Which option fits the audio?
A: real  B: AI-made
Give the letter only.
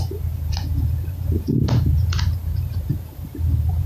B